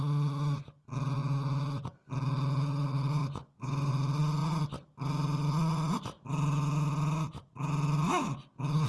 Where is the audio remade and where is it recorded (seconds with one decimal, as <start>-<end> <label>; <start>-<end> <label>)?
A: 0.0-3.2 recorded; 3.2-3.9 remade; 3.9-8.9 recorded